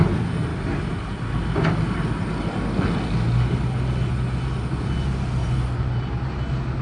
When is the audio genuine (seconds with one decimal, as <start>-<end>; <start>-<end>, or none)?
0.0-5.4; 6.0-6.8